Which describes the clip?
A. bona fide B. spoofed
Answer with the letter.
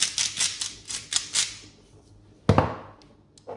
A